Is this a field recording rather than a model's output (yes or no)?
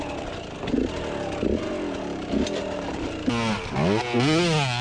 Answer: yes